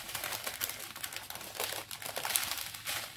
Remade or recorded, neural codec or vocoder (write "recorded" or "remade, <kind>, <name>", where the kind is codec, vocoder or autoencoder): recorded